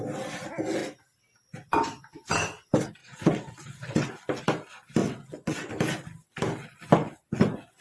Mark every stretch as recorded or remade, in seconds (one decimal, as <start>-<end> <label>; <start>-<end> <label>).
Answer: 0.0-3.0 recorded; 3.0-4.1 remade; 4.1-5.0 recorded; 5.0-5.7 remade; 5.7-7.8 recorded